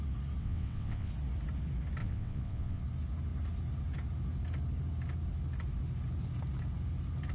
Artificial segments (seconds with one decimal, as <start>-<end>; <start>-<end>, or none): 0.4-1.1; 2.0-2.8

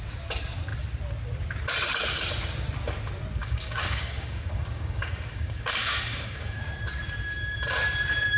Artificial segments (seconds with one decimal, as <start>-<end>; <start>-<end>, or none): 3.4-6.6

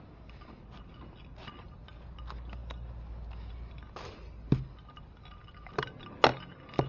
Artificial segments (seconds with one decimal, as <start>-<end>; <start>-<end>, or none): none

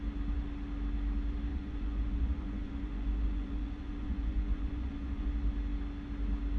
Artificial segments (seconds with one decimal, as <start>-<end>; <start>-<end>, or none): 1.5-5.3

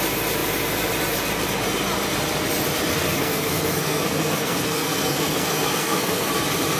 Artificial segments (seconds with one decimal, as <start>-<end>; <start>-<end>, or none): 2.9-6.3

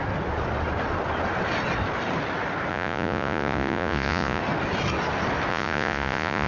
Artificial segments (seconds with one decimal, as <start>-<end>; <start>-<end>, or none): 2.7-4.4; 5.5-6.5

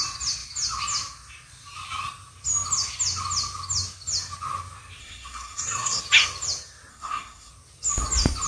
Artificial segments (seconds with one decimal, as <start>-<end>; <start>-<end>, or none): 5.0-6.0; 6.9-7.5

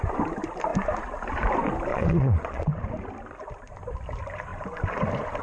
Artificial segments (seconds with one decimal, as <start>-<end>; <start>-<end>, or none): 1.9-2.7